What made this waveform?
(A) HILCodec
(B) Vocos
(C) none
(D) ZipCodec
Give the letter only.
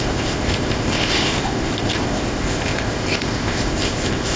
D